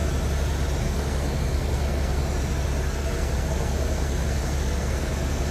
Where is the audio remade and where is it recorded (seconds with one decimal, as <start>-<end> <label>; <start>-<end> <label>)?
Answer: 0.0-0.8 recorded; 0.8-2.2 remade; 2.2-2.8 recorded; 2.8-5.5 remade